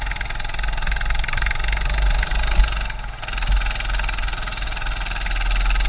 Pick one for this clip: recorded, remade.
recorded